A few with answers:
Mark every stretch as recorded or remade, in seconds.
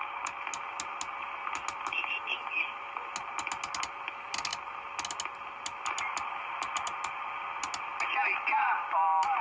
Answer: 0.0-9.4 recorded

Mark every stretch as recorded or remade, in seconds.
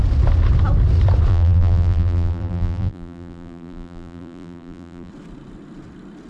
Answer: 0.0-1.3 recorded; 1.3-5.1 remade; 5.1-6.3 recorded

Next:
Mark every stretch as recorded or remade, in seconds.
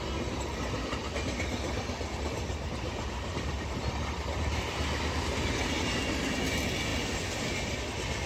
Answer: 0.0-8.3 recorded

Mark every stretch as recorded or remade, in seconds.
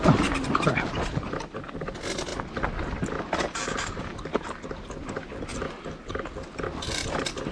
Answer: 0.0-7.5 recorded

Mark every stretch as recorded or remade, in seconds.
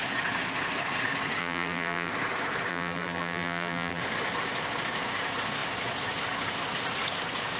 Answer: 0.0-1.4 recorded; 1.4-2.1 remade; 2.1-2.7 recorded; 2.7-4.0 remade; 4.0-7.6 recorded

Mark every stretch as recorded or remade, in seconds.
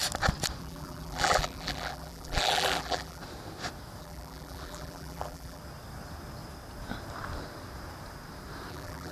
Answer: 0.0-0.6 recorded; 0.6-3.2 remade; 3.2-4.0 recorded; 4.0-5.6 remade; 5.6-8.7 recorded; 8.7-9.1 remade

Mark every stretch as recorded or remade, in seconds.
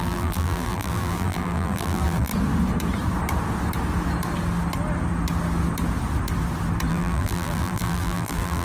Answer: 0.0-2.3 remade; 2.3-6.9 recorded; 6.9-8.6 remade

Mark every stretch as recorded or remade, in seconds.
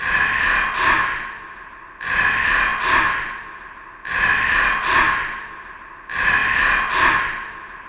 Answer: 0.0-7.9 recorded